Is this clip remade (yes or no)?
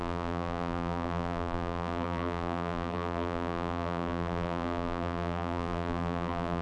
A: yes